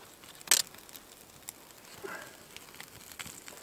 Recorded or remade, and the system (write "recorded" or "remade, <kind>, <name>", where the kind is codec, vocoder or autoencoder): recorded